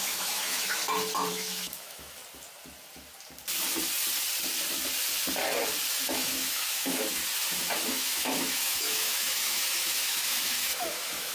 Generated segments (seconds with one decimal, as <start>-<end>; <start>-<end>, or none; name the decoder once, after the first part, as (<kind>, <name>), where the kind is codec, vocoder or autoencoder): 0.0-0.8 (autoencoder, DAC-VAE); 1.3-2.2; 5.9-7.2; 7.9-11.3